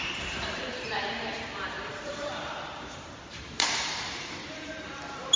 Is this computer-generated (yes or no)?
yes